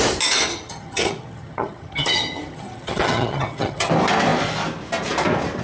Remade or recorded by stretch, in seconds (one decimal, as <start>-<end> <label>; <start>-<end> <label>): 0.0-0.5 recorded; 0.5-3.9 remade; 3.9-5.6 recorded